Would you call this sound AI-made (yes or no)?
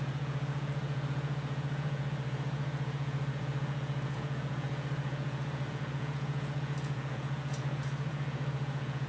yes